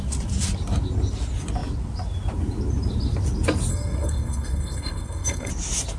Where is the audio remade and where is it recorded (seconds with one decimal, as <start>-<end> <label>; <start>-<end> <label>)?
0.0-3.7 recorded; 3.7-5.5 remade; 5.5-6.0 recorded